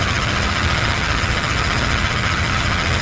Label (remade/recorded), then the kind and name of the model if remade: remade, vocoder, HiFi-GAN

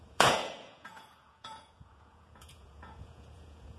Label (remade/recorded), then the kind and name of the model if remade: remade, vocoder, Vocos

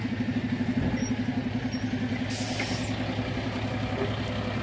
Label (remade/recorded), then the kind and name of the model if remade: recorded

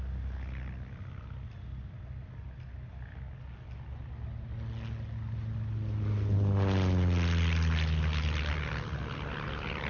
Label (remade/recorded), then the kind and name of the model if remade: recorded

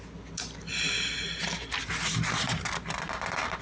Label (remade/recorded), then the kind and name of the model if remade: recorded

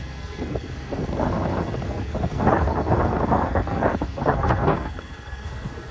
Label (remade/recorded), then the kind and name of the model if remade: remade, codec, SNAC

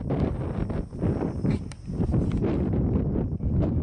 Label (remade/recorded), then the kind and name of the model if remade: recorded